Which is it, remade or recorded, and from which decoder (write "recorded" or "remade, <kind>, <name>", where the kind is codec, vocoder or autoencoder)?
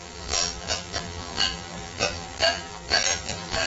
remade, vocoder, BigVGAN v2